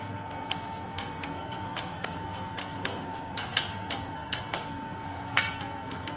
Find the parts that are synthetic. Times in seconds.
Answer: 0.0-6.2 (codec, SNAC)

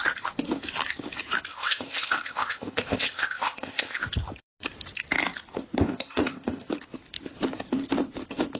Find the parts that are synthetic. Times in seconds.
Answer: 1.5-4.0 (codec, ZipCodec); 5.8-6.7

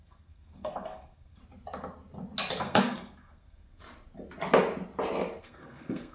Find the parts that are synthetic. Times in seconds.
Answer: 0.0-1.4 (codec, SNAC); 2.6-3.8; 5.4-6.1